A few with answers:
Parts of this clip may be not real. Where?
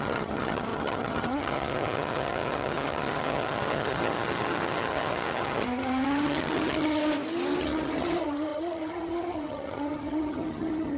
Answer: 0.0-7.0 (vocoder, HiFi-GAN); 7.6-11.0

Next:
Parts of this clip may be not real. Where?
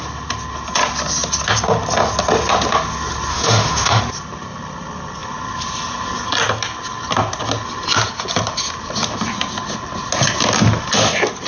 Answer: 3.3-4.0 (autoencoder, DAC-VAE)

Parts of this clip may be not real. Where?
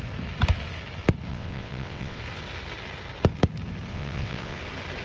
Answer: 1.3-2.2 (vocoder, WaveNeXt); 3.9-4.6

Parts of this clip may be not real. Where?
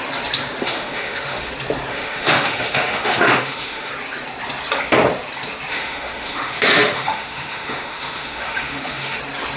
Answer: 0.6-1.5 (autoencoder, DAC-VAE); 1.9-3.9; 5.7-9.2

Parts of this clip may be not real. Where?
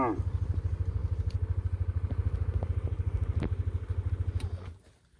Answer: none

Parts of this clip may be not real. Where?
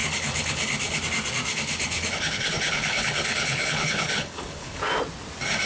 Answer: 0.0-1.0 (codec, HILCodec); 1.5-4.8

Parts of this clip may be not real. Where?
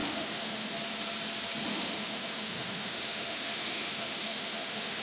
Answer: 0.0-0.7 (autoencoder, DAC-VAE); 1.7-5.0